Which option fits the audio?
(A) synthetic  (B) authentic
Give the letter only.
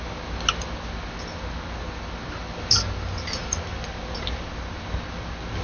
B